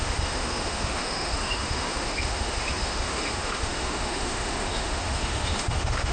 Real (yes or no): no